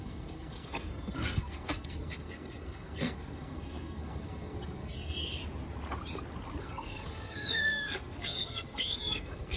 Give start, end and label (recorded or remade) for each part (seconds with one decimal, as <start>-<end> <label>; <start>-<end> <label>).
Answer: 0.0-5.4 remade; 5.4-6.6 recorded; 6.6-9.6 remade